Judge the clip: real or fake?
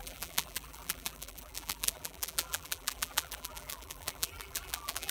fake